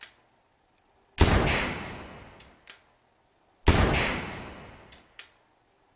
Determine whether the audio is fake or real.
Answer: real